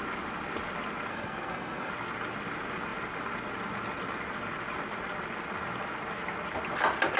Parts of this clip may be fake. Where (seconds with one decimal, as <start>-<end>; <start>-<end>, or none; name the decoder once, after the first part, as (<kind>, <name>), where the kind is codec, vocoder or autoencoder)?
1.1-1.9 (codec, SNAC)